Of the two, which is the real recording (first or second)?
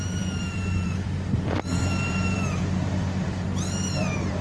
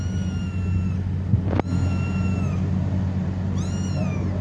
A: second